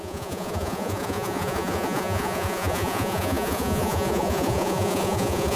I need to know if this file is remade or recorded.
remade